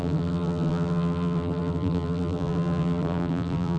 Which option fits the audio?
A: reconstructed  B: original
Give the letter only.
A